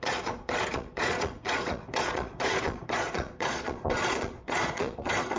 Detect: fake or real fake